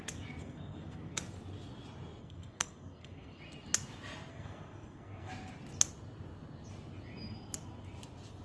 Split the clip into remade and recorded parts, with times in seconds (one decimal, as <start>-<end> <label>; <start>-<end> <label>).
0.0-0.4 recorded; 0.4-1.2 remade; 1.2-2.2 recorded; 2.2-3.4 remade; 3.4-4.3 recorded; 4.3-5.3 remade; 5.3-8.4 recorded